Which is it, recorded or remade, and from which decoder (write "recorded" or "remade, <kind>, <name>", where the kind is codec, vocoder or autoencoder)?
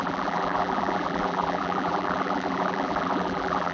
remade, vocoder, BigVGAN v2